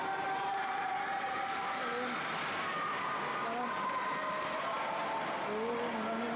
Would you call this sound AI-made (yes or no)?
no